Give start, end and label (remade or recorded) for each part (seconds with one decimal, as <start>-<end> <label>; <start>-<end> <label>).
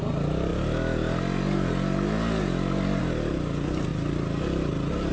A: 0.0-5.1 recorded